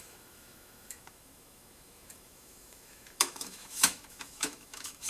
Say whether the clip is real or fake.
fake